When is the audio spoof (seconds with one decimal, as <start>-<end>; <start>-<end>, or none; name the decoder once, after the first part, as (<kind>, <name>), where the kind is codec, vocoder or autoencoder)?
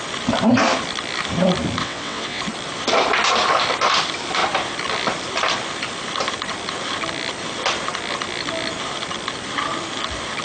1.8-2.4 (vocoder, WaveNeXt)